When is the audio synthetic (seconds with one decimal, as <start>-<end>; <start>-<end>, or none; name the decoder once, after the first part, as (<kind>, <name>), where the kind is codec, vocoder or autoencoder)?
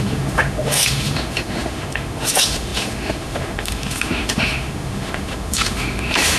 0.0-6.4 (autoencoder, DAC-VAE)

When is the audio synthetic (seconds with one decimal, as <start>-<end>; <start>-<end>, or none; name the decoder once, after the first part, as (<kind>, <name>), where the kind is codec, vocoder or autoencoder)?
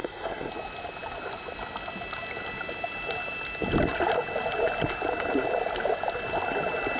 0.0-0.5 (codec, SNAC)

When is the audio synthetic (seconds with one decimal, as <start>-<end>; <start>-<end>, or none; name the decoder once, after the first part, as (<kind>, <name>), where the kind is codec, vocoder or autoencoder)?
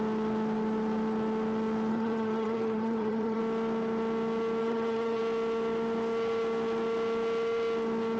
1.9-3.4 (vocoder, HiFi-GAN); 4.6-5.2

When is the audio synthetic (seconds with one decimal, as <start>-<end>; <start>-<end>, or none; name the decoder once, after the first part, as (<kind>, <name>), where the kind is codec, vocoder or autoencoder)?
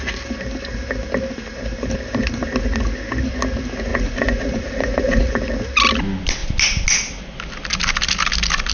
3.9-5.3 (vocoder, Vocos)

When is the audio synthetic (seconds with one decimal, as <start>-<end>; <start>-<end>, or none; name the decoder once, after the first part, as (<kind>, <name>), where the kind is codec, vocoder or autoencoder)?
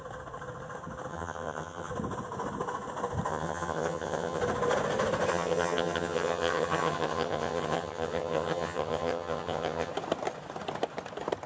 1.1-1.9 (vocoder, HiFi-GAN); 3.3-4.4; 5.3-9.9